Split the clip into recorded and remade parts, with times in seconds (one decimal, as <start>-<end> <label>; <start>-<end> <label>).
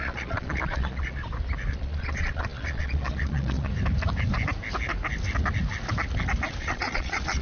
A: 0.0-1.2 remade; 1.2-1.7 recorded; 1.7-3.7 remade; 3.7-6.6 recorded; 6.6-7.4 remade